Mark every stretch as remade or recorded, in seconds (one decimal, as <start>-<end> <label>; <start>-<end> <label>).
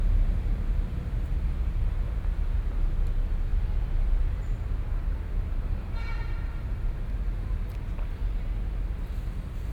0.0-9.7 recorded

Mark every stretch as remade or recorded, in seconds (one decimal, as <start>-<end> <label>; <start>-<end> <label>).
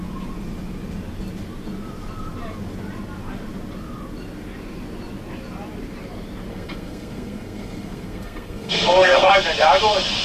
0.0-6.5 recorded; 6.5-9.3 remade; 9.3-10.2 recorded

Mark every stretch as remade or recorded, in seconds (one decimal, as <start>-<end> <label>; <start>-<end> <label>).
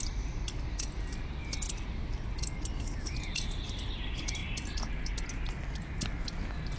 0.0-6.8 recorded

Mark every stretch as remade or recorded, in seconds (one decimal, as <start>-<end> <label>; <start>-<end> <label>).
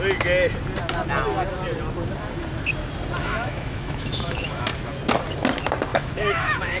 0.0-3.2 recorded; 3.2-4.7 remade; 4.7-5.9 recorded; 5.9-6.8 remade